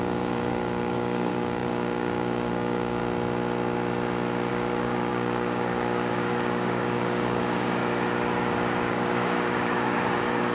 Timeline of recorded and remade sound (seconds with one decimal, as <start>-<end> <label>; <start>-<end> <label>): 0.0-3.0 remade; 3.0-4.5 recorded; 4.5-7.8 remade; 7.8-8.9 recorded; 8.9-10.5 remade